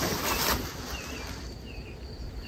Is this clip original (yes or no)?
yes